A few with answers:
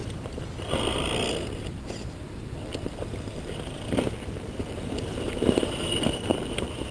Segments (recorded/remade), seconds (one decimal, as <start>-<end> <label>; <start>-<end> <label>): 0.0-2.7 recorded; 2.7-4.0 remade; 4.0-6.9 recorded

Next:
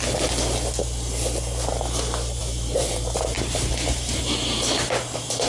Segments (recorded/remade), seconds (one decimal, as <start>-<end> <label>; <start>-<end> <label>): 0.0-2.4 recorded; 2.4-5.5 remade

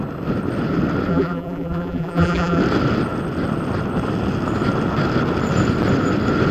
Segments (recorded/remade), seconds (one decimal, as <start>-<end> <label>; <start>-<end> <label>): 0.0-1.1 recorded; 1.1-2.6 remade; 2.6-6.5 recorded